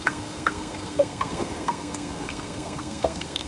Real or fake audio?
fake